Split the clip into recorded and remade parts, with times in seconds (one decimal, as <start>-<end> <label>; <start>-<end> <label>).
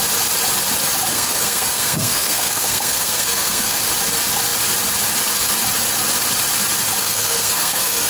0.0-1.1 recorded; 1.1-3.8 remade; 3.8-7.0 recorded; 7.0-8.1 remade